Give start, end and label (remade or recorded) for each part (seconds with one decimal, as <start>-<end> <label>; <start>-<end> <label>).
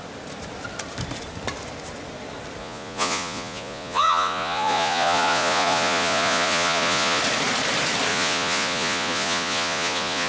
0.0-2.6 recorded; 2.6-7.2 remade; 7.2-8.1 recorded; 8.1-10.3 remade